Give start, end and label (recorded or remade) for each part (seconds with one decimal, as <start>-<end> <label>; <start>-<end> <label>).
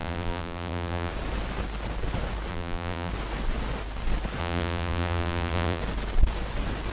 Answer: 0.0-1.1 remade; 1.1-2.5 recorded; 2.5-3.1 remade; 3.1-4.4 recorded; 4.4-5.8 remade; 5.8-6.9 recorded